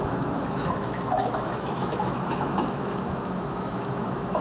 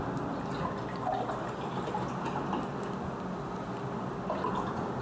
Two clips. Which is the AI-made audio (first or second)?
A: first